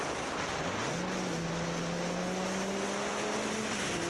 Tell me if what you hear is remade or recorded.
recorded